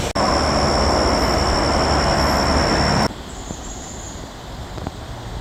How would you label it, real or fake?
real